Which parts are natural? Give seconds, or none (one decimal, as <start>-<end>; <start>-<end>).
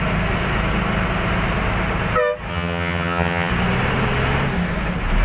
0.0-2.5; 3.5-5.2